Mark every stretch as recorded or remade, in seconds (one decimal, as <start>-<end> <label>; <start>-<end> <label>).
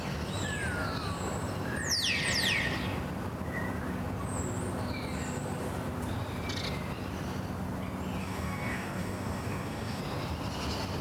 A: 0.0-8.2 recorded; 8.2-10.0 remade; 10.0-11.0 recorded